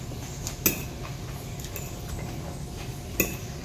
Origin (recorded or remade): recorded